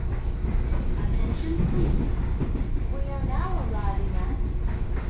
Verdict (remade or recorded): recorded